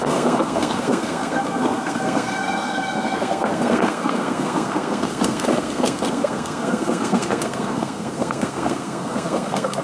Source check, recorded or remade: remade